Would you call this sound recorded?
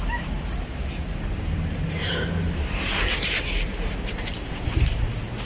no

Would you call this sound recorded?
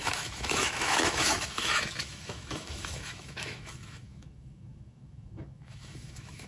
no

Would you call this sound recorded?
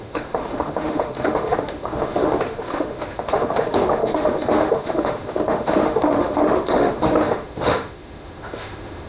no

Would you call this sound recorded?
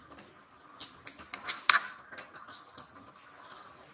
yes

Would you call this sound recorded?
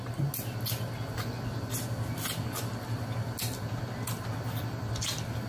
yes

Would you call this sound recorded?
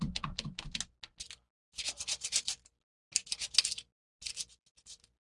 yes